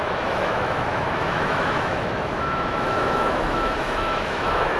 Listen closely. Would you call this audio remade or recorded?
remade